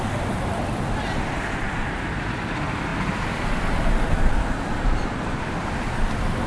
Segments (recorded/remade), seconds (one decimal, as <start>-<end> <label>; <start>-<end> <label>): 0.0-6.5 recorded